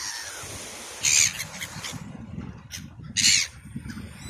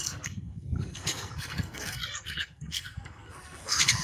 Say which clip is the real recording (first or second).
first